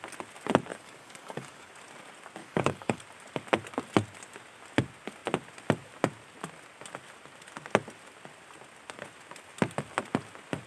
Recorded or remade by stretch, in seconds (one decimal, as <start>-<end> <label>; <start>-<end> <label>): 0.0-0.7 recorded; 0.7-1.7 remade; 1.7-2.4 recorded; 2.4-3.0 remade; 3.0-10.7 recorded